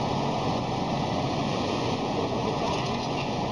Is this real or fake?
fake